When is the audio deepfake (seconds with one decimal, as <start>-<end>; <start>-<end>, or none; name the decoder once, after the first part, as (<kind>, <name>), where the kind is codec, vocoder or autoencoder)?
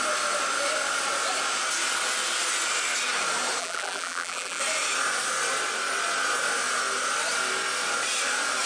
3.6-4.6 (vocoder, BigVGAN v2)